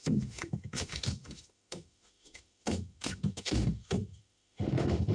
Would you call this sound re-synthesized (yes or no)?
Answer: yes